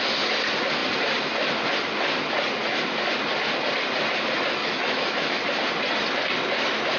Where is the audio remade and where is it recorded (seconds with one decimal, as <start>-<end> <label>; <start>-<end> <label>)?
0.0-4.6 recorded; 4.6-5.4 remade; 5.4-7.0 recorded